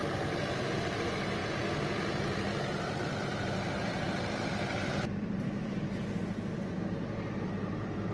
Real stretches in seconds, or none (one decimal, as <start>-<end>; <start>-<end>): 1.4-2.0; 2.5-3.2; 6.2-6.7

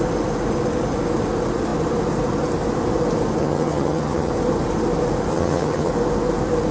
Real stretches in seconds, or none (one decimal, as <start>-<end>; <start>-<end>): 0.0-3.4; 4.3-5.3; 5.9-6.7

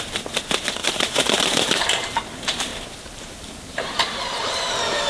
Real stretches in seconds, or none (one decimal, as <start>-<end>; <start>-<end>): 0.0-0.8; 2.2-2.7

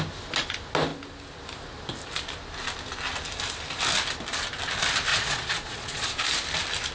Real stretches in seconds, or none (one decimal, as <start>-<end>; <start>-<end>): 0.0-5.1; 6.2-6.9

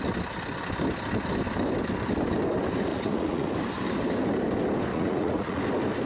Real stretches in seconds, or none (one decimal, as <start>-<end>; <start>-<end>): 0.0-2.9; 3.5-4.9; 5.6-6.1

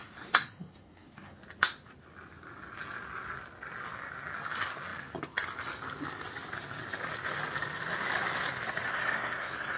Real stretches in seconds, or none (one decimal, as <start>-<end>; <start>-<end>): 1.4-8.9